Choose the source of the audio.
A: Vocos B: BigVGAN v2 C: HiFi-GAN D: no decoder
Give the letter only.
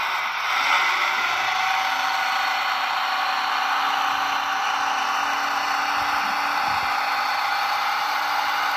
D